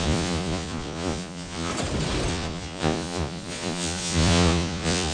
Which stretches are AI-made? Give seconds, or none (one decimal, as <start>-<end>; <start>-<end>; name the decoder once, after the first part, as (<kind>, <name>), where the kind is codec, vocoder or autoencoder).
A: 0.0-1.7 (vocoder, Vocos); 2.3-5.1